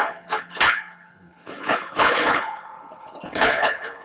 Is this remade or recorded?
remade